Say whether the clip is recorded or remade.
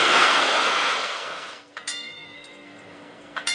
remade